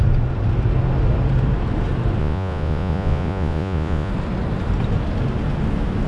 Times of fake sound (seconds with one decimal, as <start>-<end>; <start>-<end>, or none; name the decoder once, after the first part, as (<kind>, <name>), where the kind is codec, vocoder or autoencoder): 2.2-4.1 (vocoder, Vocos)